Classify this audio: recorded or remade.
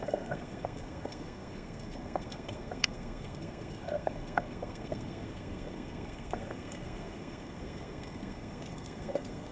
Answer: remade